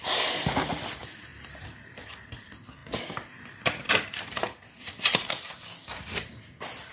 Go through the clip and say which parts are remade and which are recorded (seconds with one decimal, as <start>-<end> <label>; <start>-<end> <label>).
0.0-1.3 recorded; 1.3-2.4 remade; 2.4-2.8 recorded; 2.8-5.3 remade; 5.3-6.9 recorded